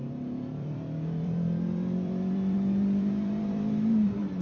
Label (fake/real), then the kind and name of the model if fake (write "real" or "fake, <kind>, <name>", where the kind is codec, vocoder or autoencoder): fake, vocoder, BigVGAN v2